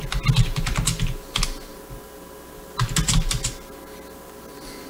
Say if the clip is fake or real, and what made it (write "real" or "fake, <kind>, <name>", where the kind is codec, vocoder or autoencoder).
real